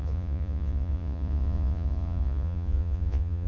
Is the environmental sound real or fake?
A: fake